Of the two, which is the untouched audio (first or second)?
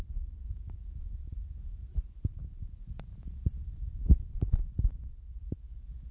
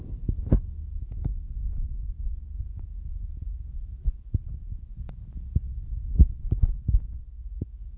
second